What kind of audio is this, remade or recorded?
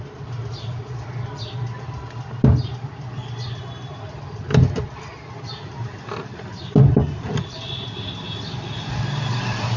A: remade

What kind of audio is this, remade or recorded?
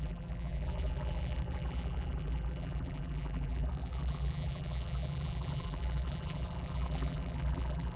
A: remade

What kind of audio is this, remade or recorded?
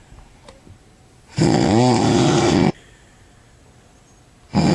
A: recorded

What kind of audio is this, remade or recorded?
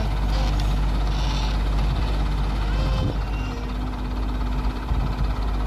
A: recorded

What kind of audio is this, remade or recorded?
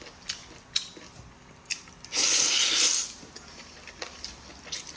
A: recorded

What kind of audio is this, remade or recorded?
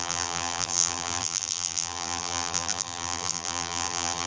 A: remade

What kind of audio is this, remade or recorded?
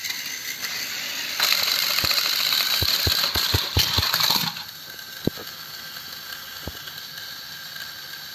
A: remade